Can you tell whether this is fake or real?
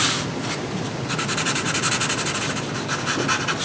real